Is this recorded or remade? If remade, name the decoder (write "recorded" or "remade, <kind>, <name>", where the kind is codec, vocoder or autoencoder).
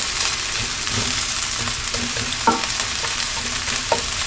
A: recorded